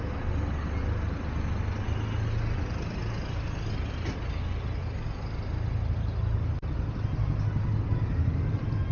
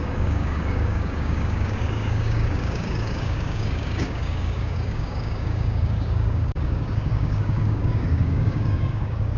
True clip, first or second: first